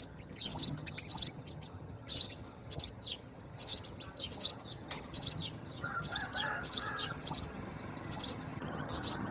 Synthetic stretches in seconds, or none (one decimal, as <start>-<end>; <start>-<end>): 0.0-9.3